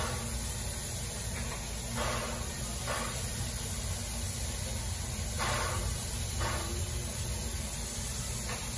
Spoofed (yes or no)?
no